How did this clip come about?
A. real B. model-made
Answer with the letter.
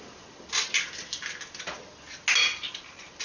A